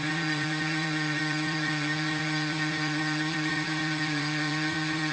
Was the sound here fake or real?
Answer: fake